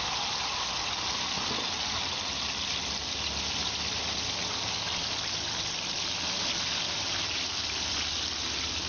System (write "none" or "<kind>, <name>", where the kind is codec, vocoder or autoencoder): none